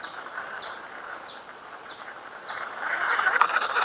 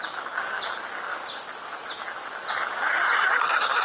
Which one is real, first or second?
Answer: second